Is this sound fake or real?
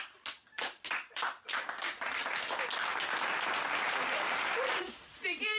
real